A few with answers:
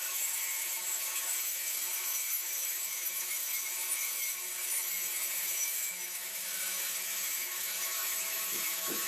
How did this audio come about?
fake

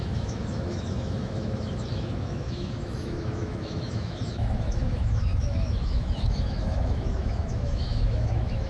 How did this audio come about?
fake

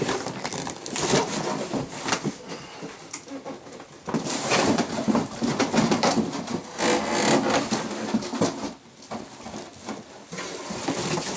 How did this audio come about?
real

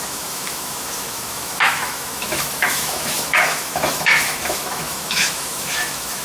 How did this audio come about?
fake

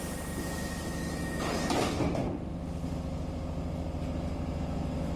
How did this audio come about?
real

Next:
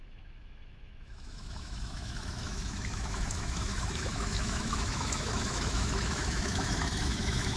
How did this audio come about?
fake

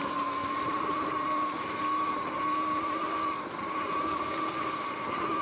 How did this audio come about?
real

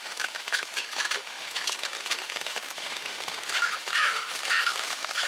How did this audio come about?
fake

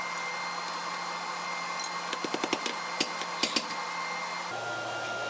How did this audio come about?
real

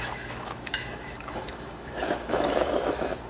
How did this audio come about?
fake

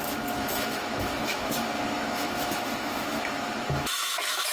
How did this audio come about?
fake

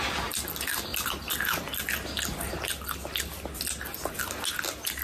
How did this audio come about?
real